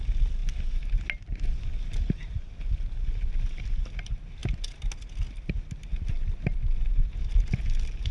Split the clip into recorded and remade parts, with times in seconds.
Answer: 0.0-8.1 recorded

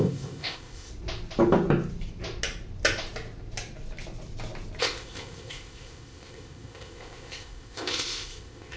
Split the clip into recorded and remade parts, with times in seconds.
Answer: 0.0-0.9 remade; 0.9-4.8 recorded; 4.8-8.8 remade

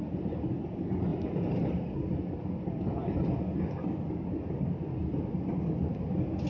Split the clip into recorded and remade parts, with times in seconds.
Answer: 0.0-6.5 recorded

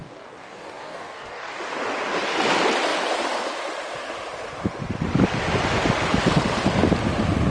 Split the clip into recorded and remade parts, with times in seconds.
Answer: 0.0-1.6 remade; 1.6-7.5 recorded

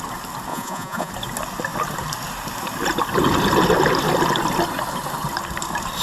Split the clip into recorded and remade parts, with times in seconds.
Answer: 0.0-0.5 recorded; 0.5-1.1 remade; 1.1-6.0 recorded